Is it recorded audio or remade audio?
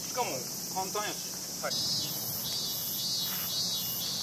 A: recorded